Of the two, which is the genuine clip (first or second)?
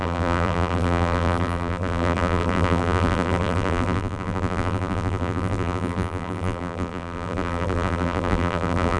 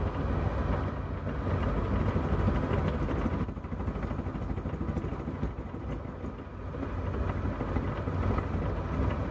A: second